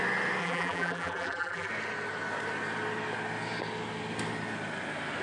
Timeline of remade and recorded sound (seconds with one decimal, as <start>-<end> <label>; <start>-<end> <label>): 0.0-0.4 recorded; 0.4-1.7 remade; 1.7-5.2 recorded